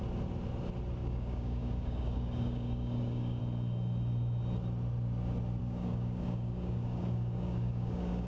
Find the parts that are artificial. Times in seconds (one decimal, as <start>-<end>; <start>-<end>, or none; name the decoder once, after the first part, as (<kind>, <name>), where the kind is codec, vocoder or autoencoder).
1.0-3.4 (codec, DAC); 5.6-8.3